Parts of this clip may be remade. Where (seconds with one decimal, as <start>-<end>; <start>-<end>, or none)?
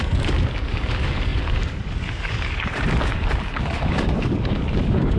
0.0-5.2